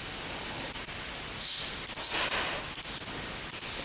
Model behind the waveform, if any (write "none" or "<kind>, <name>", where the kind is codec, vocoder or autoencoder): none